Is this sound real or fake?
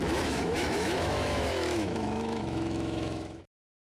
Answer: fake